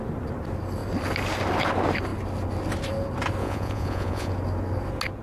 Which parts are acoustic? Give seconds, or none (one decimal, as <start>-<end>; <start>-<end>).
0.0-3.4; 4.3-5.2

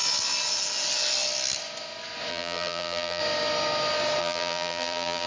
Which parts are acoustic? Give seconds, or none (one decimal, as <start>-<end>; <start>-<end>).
0.0-2.3; 3.2-4.2

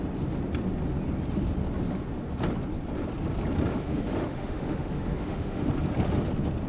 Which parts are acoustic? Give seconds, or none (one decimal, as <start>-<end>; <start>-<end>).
0.0-3.7; 5.7-6.7

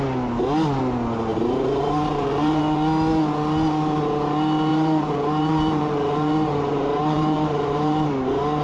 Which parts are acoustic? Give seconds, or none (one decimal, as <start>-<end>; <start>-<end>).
0.0-1.3; 2.6-4.7; 8.1-8.6

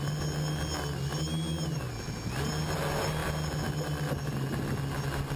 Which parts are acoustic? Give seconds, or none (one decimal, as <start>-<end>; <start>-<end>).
0.0-5.4

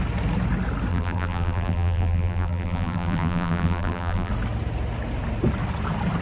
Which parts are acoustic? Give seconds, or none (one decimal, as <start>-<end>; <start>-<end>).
0.0-0.9; 4.3-6.2

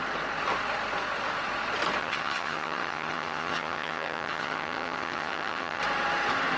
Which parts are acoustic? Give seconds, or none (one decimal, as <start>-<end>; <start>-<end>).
0.0-2.0; 5.8-6.6

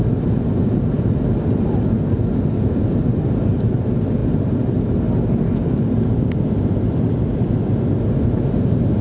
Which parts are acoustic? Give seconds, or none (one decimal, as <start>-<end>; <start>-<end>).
0.0-9.0